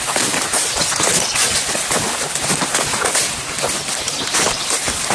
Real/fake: real